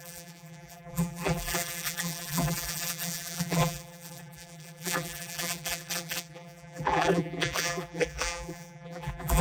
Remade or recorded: remade